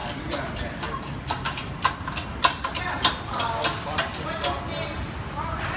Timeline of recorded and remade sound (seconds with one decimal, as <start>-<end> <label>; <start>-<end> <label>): 0.0-5.8 recorded